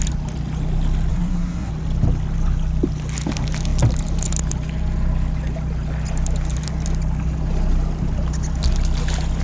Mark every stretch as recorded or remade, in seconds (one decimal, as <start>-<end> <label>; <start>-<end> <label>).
0.0-1.1 recorded; 1.1-1.7 remade; 1.7-9.4 recorded